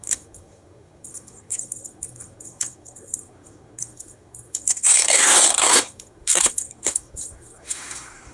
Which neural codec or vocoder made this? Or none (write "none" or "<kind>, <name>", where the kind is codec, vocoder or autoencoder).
codec, SNAC